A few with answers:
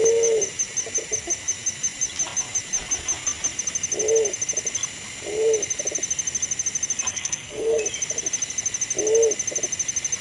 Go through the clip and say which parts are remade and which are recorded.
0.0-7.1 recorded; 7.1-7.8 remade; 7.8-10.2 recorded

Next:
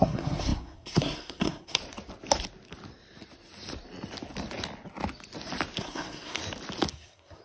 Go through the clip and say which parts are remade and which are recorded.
0.0-1.8 remade; 1.8-5.8 recorded; 5.8-6.4 remade; 6.4-6.9 recorded; 6.9-7.4 remade